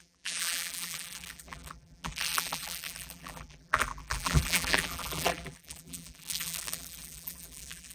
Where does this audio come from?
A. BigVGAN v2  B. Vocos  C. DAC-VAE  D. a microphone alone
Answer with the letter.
A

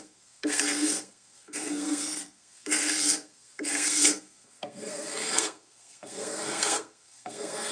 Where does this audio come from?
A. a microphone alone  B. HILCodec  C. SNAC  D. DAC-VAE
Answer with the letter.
C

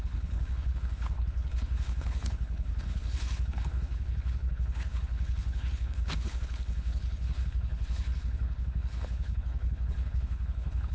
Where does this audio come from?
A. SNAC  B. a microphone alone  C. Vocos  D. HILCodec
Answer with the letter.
D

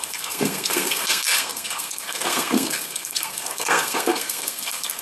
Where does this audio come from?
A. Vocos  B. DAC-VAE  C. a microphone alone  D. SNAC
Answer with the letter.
D